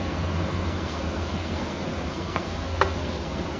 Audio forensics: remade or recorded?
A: remade